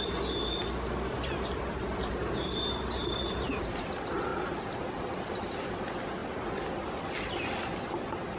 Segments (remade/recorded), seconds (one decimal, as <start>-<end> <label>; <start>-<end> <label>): 0.0-8.4 recorded